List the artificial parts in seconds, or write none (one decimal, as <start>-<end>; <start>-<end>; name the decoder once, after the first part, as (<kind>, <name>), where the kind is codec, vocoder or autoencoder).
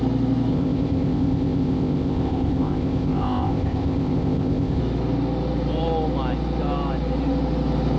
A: 0.5-4.8 (codec, ZipCodec)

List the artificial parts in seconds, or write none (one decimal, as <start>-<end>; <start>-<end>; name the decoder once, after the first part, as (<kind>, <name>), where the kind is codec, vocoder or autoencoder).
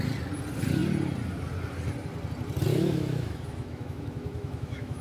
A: 2.7-5.0 (autoencoder, DAC-VAE)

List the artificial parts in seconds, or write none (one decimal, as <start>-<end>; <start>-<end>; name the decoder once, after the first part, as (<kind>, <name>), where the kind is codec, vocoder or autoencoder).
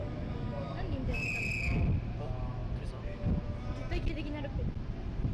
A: 0.0-1.3 (codec, DAC)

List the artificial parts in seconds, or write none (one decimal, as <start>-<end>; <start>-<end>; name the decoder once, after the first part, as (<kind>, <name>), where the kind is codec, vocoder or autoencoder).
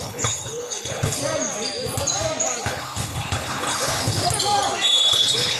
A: 0.0-1.2 (codec, HILCodec); 2.6-4.2; 5.1-5.6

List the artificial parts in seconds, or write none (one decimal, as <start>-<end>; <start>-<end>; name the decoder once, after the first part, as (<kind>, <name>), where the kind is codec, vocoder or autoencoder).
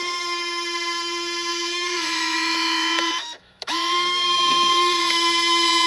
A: 1.5-5.0 (autoencoder, DAC-VAE)